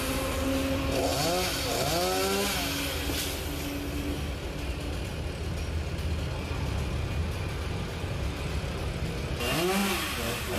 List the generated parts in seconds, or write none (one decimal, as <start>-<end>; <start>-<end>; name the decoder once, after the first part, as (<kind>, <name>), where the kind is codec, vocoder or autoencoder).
none